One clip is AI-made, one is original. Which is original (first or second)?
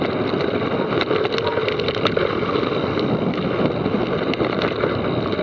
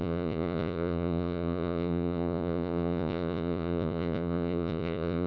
first